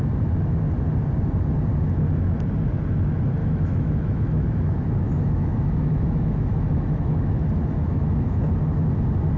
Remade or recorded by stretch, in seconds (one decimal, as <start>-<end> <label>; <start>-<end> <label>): 0.0-3.4 recorded; 3.4-7.3 remade; 7.3-7.8 recorded; 7.8-8.5 remade; 8.5-9.4 recorded

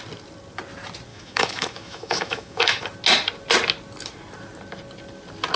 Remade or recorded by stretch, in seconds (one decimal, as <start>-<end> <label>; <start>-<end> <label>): 0.0-1.1 recorded; 1.1-2.8 remade; 2.8-5.6 recorded

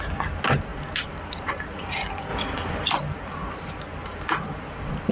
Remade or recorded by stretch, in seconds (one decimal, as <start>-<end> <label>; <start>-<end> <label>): 0.0-5.1 recorded